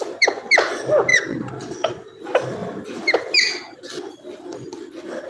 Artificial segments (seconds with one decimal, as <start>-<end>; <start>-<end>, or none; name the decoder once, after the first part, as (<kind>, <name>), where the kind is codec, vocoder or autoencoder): 1.1-2.2 (vocoder, Vocos)